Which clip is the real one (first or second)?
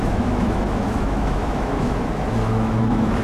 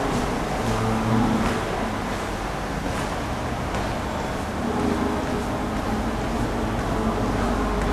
second